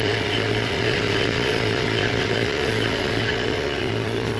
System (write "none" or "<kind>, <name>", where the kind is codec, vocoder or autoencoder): vocoder, Vocos